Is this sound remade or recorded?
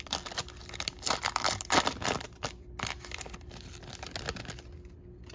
recorded